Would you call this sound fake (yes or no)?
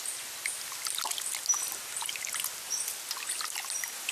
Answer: no